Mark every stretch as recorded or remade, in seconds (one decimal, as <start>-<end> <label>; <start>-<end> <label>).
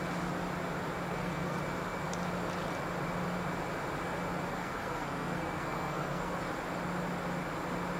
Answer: 0.0-1.1 recorded; 1.1-1.6 remade; 1.6-4.5 recorded; 4.5-6.4 remade; 6.4-8.0 recorded